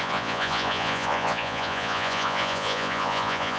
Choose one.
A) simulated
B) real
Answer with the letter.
A